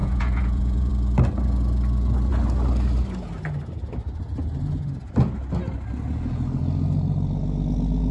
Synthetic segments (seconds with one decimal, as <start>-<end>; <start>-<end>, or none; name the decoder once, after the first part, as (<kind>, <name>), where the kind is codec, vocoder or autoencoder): 0.0-0.9 (vocoder, Vocos)